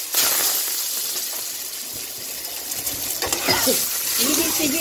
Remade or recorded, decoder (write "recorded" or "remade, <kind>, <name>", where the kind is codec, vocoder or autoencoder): recorded